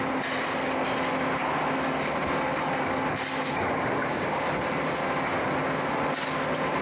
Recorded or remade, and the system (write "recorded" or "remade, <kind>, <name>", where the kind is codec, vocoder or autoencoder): recorded